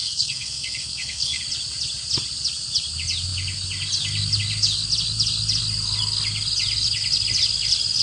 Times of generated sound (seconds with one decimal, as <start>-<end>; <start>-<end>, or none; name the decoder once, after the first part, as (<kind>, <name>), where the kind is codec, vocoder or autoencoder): 0.0-1.4 (codec, SNAC)